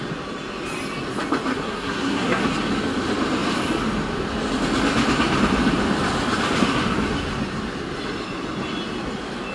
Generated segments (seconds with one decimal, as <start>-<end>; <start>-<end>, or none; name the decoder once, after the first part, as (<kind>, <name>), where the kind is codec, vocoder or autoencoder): 1.5-2.4 (codec, SNAC)